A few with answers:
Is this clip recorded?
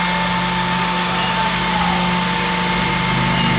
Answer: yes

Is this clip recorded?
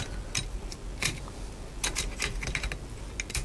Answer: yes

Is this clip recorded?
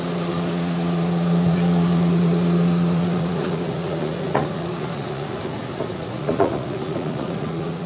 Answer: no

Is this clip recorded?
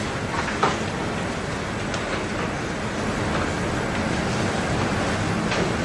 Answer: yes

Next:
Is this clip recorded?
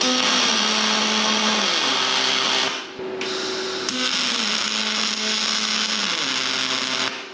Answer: yes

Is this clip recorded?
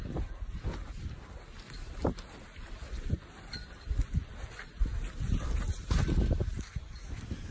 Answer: yes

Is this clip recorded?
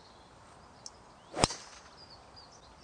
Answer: yes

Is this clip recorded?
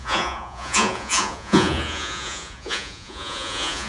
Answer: no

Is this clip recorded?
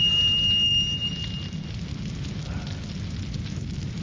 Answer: yes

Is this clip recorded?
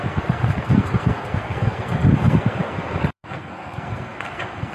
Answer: no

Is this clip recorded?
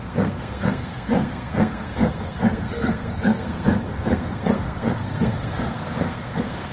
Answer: no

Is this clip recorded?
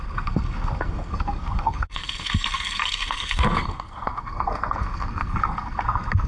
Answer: no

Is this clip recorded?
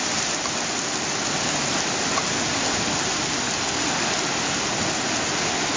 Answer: yes